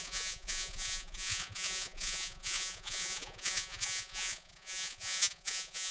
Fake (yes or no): yes